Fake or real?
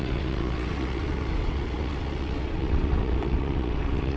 fake